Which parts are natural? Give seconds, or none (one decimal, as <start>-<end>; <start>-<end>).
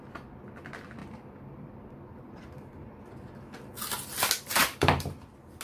0.0-1.0; 3.0-4.6